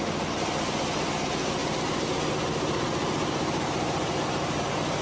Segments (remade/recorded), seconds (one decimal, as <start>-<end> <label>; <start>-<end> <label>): 0.0-5.0 recorded